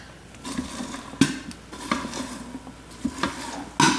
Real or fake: real